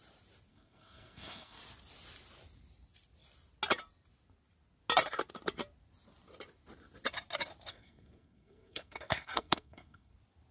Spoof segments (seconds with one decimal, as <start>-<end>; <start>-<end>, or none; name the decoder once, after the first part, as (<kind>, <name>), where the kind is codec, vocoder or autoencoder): 0.5-1.6 (codec, SNAC); 7.7-10.1